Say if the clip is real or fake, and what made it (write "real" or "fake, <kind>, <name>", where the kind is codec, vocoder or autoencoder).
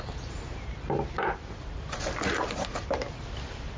fake, vocoder, BigVGAN v2